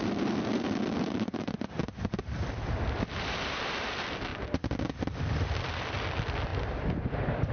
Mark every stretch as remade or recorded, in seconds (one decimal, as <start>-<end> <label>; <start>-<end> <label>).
0.0-4.3 remade; 4.3-5.1 recorded; 5.1-7.5 remade